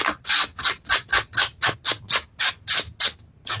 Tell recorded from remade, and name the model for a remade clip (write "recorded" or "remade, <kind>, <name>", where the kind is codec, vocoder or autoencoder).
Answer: recorded